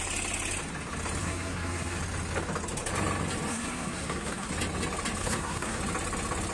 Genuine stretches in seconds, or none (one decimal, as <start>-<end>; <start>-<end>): 0.0-1.2; 2.0-3.5; 4.5-5.2; 5.8-6.5